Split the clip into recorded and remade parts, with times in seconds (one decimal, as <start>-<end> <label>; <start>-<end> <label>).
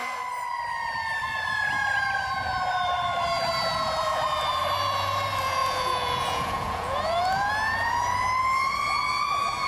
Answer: 0.0-5.6 recorded; 5.6-7.5 remade; 7.5-9.7 recorded